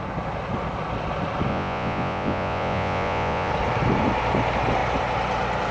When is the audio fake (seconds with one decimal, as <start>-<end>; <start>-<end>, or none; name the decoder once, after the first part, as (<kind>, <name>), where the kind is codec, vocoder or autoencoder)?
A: 1.5-3.5 (vocoder, Vocos)